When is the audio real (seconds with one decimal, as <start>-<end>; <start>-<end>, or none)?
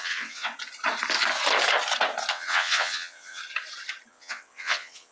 0.5-2.3; 3.4-4.1